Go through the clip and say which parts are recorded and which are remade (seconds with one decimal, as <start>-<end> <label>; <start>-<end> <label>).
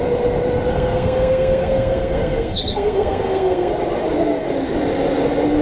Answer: 0.0-0.7 recorded; 0.7-3.7 remade; 3.7-5.6 recorded